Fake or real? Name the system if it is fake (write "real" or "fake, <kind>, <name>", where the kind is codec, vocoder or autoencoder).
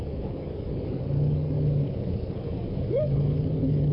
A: fake, codec, DAC